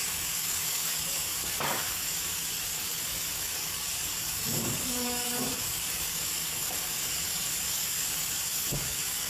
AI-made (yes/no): yes